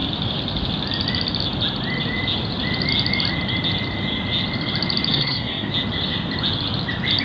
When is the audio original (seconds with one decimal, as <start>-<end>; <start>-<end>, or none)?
0.0-5.1; 5.7-7.2